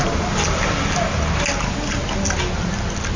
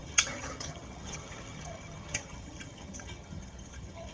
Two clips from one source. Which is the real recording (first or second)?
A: first